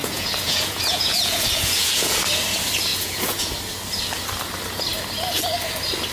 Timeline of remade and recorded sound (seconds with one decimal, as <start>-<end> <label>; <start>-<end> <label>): 0.0-2.2 remade; 2.2-2.9 recorded; 2.9-3.5 remade; 3.5-6.1 recorded